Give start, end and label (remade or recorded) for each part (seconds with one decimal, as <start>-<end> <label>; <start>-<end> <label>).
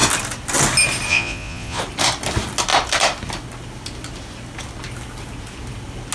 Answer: 0.0-1.1 recorded; 1.1-1.8 remade; 1.8-6.1 recorded